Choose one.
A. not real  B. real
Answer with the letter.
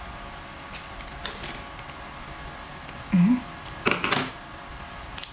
B